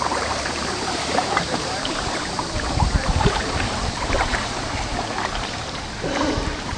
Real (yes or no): no